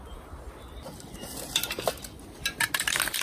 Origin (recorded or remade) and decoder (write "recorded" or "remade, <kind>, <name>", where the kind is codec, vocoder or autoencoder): recorded